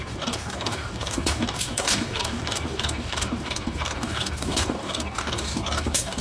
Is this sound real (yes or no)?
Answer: no